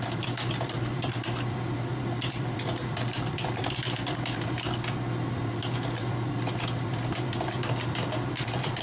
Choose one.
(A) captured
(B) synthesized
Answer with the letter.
B